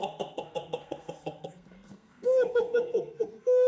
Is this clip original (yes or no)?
no